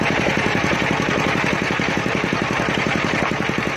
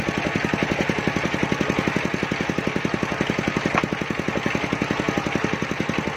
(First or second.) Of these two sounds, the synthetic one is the first